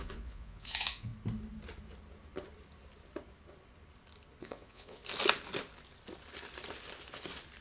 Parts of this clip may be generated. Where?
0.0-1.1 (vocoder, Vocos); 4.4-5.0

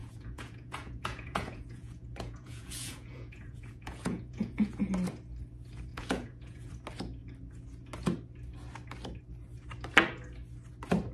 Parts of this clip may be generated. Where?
0.0-4.9 (vocoder, Vocos); 5.9-6.7